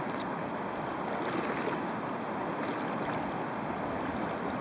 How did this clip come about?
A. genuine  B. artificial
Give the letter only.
A